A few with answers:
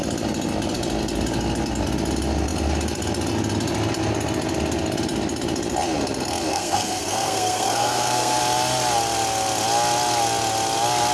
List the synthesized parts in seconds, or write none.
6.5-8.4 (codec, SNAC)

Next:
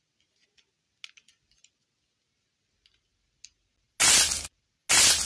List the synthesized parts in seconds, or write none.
none

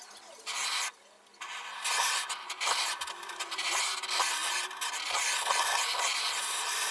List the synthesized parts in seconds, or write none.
none

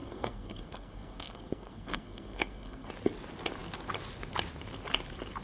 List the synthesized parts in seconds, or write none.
0.0-2.9 (codec, SNAC)